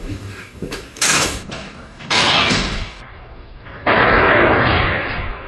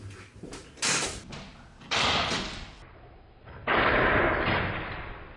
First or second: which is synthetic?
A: first